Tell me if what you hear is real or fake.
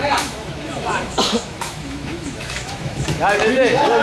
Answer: fake